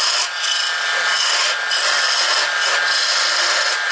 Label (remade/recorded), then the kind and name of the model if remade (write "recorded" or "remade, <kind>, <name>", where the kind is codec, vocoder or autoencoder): recorded